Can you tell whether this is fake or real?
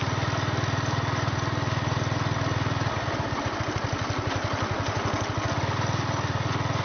real